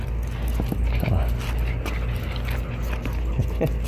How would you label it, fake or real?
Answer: real